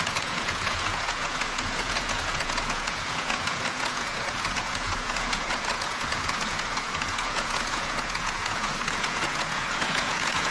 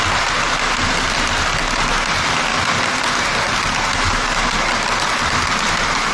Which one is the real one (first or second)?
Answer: second